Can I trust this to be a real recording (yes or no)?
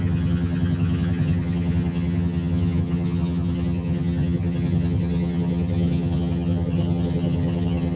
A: no